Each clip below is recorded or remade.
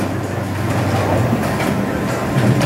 recorded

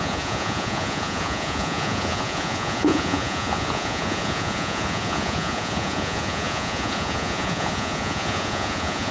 remade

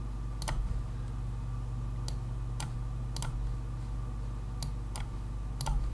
recorded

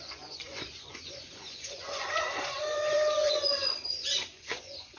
remade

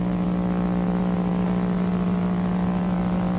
recorded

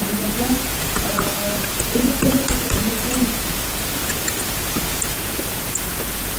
remade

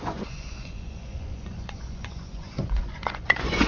remade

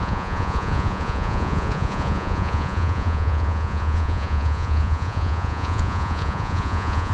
remade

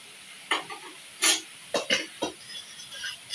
recorded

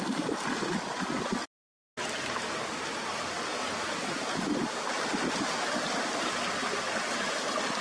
recorded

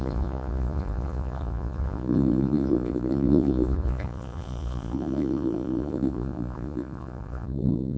remade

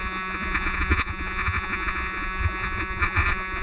remade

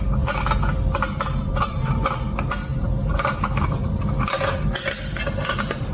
recorded